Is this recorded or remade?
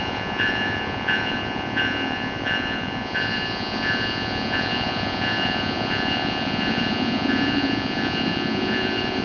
remade